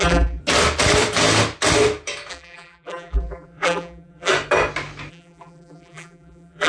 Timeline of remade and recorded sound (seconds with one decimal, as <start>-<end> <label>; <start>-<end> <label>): 0.0-0.4 remade; 0.4-2.3 recorded; 2.3-4.3 remade; 4.3-5.1 recorded; 5.1-6.7 remade